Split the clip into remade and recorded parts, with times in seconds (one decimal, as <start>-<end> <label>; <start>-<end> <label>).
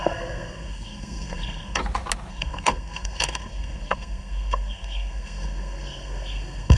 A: 0.0-1.8 remade; 1.8-2.3 recorded; 2.3-6.8 remade